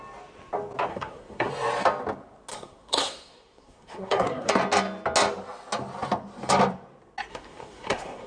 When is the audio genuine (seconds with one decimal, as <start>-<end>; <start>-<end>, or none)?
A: 0.0-0.9; 1.5-2.5; 4.5-7.3